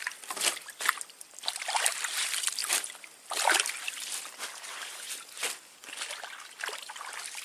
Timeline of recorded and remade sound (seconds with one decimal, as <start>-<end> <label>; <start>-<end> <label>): 0.0-2.6 remade; 2.6-6.5 recorded; 6.5-7.4 remade